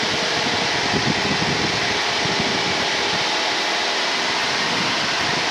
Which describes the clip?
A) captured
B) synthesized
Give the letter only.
A